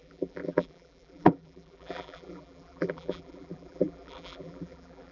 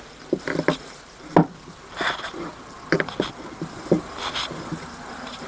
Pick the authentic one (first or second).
second